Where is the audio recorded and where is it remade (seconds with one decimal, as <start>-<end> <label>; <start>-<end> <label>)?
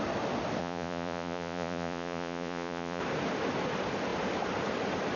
0.0-0.6 recorded; 0.6-3.0 remade; 3.0-5.2 recorded